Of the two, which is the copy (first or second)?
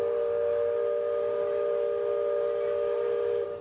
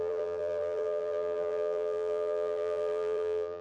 second